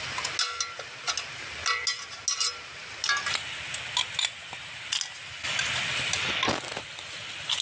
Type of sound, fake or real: real